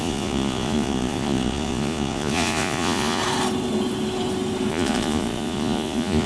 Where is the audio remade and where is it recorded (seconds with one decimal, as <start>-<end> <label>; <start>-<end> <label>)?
0.0-3.2 remade; 3.2-4.7 recorded; 4.7-6.3 remade